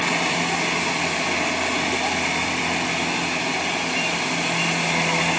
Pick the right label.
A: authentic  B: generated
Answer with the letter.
A